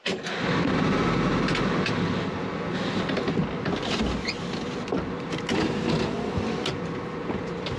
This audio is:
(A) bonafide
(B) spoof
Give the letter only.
A